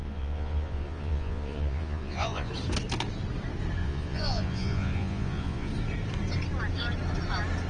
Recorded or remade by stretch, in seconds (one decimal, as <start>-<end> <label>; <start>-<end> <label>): 0.0-2.5 remade; 2.5-3.8 recorded; 3.8-5.7 remade; 5.7-7.7 recorded